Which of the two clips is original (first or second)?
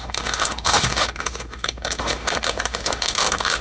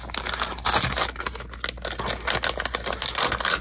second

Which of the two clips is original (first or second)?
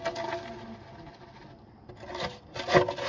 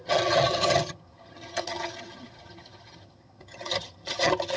first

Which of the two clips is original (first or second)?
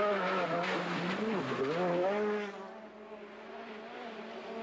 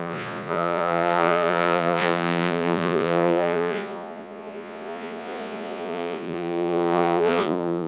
first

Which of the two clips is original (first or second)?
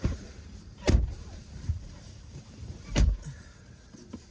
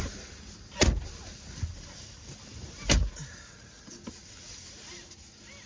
second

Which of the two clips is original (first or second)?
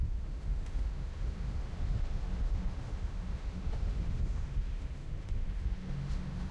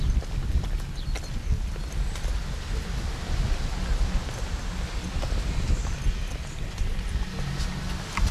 second